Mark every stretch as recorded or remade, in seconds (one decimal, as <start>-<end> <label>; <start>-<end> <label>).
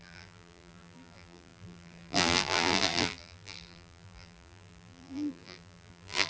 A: 0.0-6.3 remade